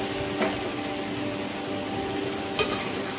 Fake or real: real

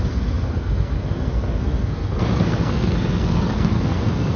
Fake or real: fake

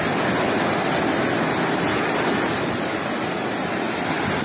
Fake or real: real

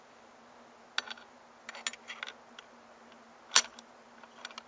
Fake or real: real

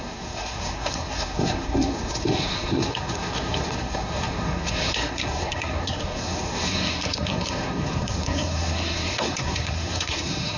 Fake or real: fake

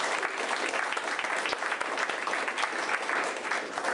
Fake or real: real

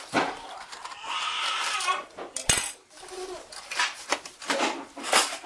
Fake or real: real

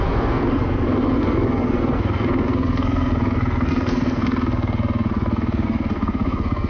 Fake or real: fake